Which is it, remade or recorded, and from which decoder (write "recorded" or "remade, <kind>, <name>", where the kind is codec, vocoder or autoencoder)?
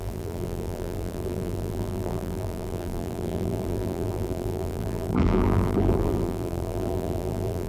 remade, vocoder, BigVGAN v2